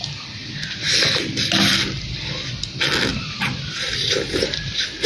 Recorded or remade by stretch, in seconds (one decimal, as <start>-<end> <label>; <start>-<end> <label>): 0.0-0.4 recorded; 0.4-0.9 remade; 0.9-3.1 recorded; 3.1-5.1 remade